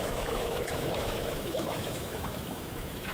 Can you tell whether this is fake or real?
fake